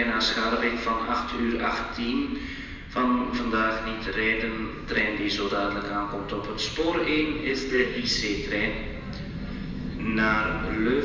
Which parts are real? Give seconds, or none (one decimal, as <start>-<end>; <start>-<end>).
0.0-7.5; 8.1-11.0